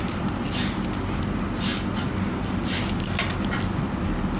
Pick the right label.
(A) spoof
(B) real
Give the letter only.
B